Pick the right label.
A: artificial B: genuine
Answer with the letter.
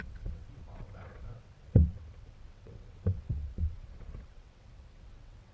A